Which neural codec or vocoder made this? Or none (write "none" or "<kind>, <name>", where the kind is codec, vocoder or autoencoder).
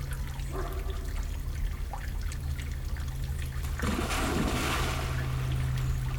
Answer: none